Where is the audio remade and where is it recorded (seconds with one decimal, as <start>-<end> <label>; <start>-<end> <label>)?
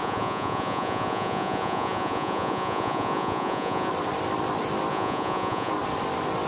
0.0-3.9 remade; 3.9-4.9 recorded; 4.9-5.7 remade; 5.7-6.5 recorded